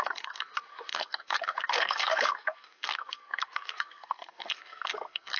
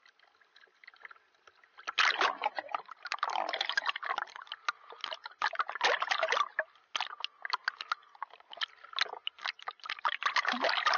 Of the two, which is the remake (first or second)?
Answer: first